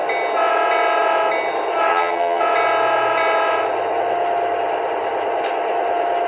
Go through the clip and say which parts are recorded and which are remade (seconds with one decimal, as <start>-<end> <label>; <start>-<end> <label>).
0.0-1.9 recorded; 1.9-2.4 remade; 2.4-6.3 recorded